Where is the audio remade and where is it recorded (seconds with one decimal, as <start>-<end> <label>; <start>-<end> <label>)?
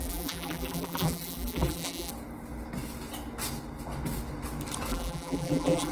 0.0-2.1 remade; 2.1-4.9 recorded; 4.9-5.9 remade